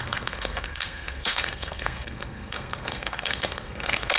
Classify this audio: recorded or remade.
remade